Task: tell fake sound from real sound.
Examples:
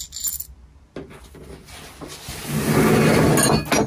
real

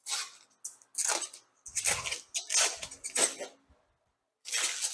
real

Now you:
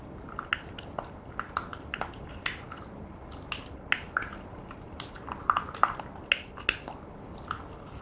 real